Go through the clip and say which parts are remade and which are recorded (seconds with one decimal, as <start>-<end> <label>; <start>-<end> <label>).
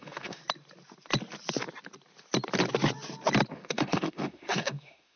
0.0-0.4 remade; 0.4-3.5 recorded; 3.5-5.2 remade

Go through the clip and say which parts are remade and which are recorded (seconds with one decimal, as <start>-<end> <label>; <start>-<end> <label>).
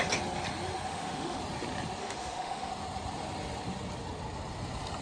0.0-0.9 recorded; 0.9-1.4 remade; 1.4-2.0 recorded; 2.0-2.7 remade; 2.7-5.0 recorded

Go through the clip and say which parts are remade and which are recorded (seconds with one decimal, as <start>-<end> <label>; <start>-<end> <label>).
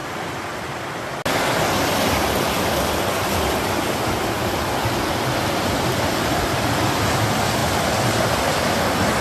0.0-9.2 recorded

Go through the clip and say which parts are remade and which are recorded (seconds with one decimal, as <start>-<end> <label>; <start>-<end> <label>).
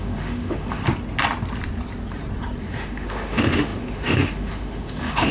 0.0-0.8 remade; 0.8-2.6 recorded; 2.6-5.3 remade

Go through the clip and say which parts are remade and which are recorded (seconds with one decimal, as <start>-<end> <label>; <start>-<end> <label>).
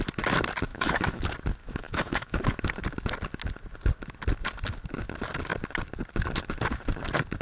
0.0-0.7 recorded; 0.7-1.2 remade; 1.2-1.6 recorded; 1.6-2.4 remade; 2.4-7.4 recorded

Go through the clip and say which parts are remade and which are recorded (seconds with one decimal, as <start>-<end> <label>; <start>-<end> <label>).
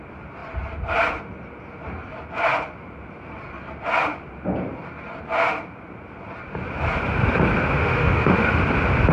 0.0-7.8 recorded; 7.8-8.6 remade; 8.6-9.1 recorded